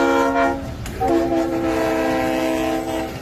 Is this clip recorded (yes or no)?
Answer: yes